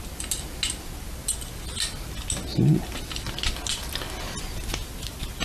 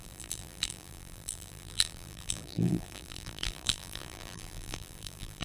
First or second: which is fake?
second